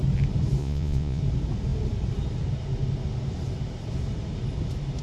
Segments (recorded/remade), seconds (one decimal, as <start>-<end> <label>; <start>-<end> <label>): 0.0-0.6 recorded; 0.6-1.2 remade; 1.2-5.0 recorded

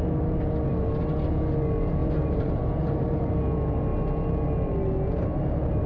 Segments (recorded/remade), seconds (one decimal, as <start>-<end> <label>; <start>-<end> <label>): 0.0-2.0 recorded; 2.0-3.3 remade; 3.3-5.9 recorded

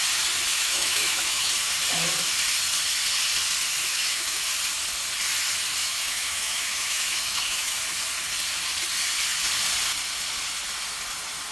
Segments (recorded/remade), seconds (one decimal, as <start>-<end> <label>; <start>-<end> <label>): 0.0-0.5 recorded; 0.5-1.5 remade; 1.5-3.9 recorded; 3.9-4.4 remade; 4.4-5.8 recorded; 5.8-7.8 remade; 7.8-11.5 recorded

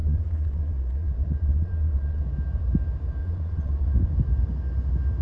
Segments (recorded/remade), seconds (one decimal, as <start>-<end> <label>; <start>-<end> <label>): 0.0-2.2 remade; 2.2-3.2 recorded; 3.2-3.9 remade; 3.9-5.2 recorded

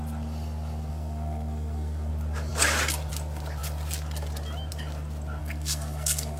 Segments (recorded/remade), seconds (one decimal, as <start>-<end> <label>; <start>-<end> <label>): 0.0-0.9 recorded; 0.9-2.1 remade; 2.1-5.4 recorded; 5.4-6.4 remade

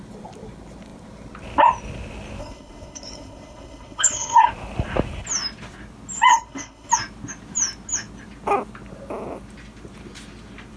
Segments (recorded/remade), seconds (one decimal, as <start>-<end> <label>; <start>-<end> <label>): 0.0-2.4 recorded; 2.4-4.5 remade; 4.5-6.3 recorded; 6.3-6.9 remade; 6.9-10.8 recorded

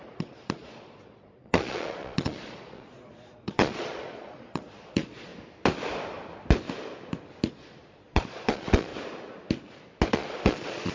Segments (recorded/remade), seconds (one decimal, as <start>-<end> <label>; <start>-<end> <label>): 0.0-5.3 remade; 5.3-7.5 recorded; 7.5-8.9 remade; 8.9-10.1 recorded; 10.1-10.9 remade